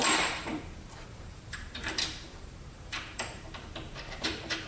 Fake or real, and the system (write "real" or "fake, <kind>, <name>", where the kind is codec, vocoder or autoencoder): fake, vocoder, BigVGAN v2